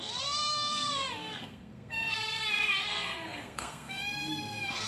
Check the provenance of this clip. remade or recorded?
remade